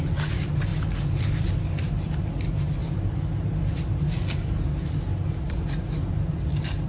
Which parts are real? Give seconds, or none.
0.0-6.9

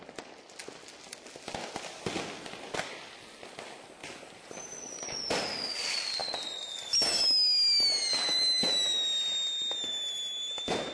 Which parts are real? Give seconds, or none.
0.0-10.9

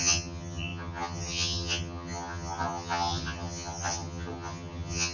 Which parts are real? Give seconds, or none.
none

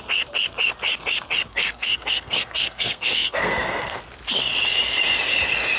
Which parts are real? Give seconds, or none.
0.0-1.5; 4.0-5.8

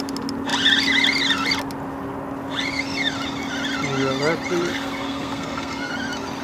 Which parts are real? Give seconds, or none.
0.0-4.7; 5.9-6.4

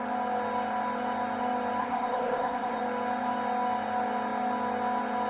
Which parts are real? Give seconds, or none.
0.0-1.8; 2.8-5.3

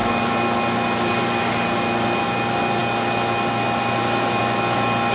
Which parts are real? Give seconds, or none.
0.0-5.1